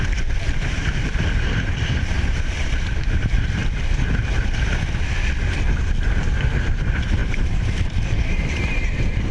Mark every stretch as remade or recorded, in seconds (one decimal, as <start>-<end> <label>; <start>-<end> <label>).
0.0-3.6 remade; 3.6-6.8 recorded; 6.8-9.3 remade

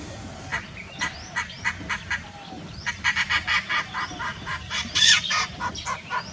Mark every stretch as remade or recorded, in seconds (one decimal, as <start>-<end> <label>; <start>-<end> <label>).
0.0-4.3 recorded; 4.3-5.0 remade; 5.0-6.3 recorded

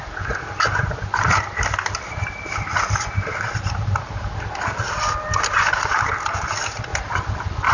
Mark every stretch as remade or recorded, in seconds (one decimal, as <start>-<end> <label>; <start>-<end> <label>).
0.0-7.7 recorded

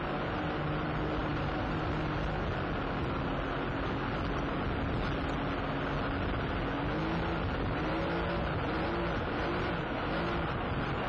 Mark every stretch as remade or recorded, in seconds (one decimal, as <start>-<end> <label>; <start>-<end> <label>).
0.0-1.2 recorded; 1.2-1.9 remade; 1.9-11.1 recorded